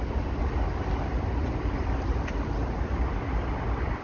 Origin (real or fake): real